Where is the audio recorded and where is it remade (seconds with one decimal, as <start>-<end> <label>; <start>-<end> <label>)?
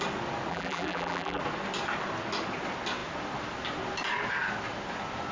0.0-0.5 recorded; 0.5-1.4 remade; 1.4-5.3 recorded